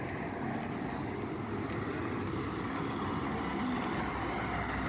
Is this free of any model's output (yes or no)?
yes